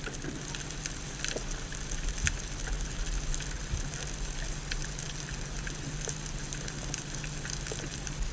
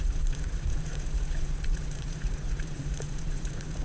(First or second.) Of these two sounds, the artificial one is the second